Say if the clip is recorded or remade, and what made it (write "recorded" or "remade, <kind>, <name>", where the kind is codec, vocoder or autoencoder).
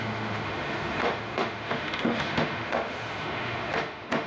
remade, autoencoder, DAC-VAE